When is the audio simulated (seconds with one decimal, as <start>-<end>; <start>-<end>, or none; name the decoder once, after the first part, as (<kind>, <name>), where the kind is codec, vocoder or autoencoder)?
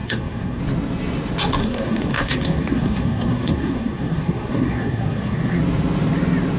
0.0-0.6 (codec, SNAC); 1.6-5.6